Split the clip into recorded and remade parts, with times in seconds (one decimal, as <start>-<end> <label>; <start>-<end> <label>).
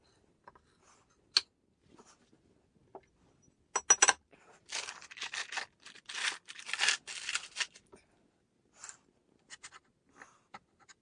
0.0-11.0 recorded